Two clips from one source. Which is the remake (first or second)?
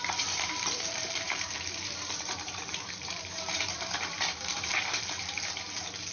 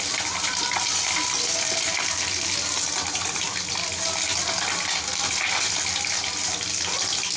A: first